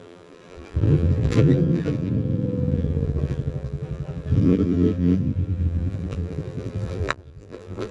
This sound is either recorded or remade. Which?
remade